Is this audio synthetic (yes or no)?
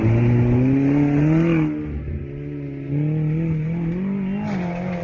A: no